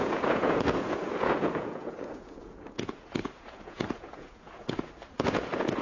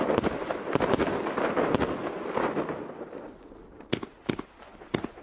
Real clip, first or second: second